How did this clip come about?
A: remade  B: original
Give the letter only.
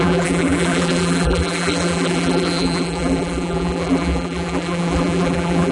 A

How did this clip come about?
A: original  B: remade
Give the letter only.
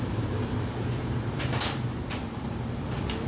B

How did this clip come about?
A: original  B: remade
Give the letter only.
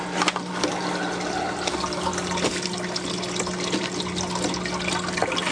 A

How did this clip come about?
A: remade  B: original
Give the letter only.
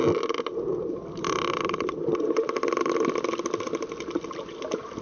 A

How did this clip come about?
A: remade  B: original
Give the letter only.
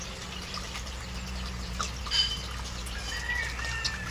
B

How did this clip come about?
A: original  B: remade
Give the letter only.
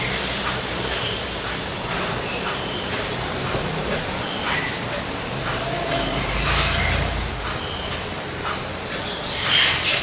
B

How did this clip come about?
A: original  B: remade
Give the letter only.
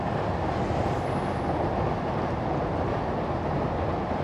A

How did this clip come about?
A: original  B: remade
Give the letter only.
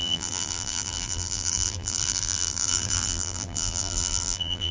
B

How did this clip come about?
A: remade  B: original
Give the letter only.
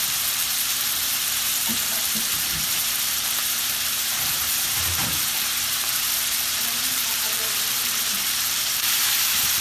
A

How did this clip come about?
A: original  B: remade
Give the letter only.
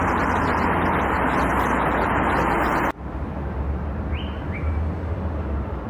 A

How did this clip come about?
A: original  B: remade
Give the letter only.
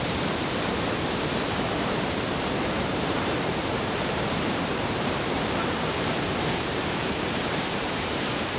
B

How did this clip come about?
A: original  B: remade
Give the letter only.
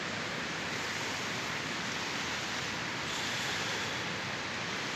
B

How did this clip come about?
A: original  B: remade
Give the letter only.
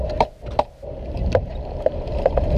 B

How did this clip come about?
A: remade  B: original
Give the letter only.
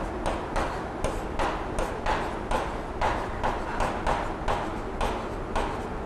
B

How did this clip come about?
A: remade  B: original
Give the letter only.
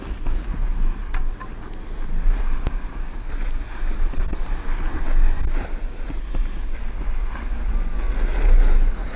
B